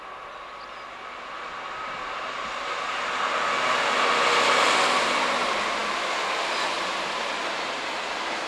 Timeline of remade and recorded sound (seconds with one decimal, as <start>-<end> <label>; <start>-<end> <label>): 0.0-8.5 recorded